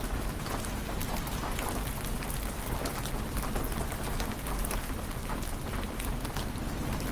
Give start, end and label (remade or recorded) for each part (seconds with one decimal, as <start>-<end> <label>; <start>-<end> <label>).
0.0-7.1 recorded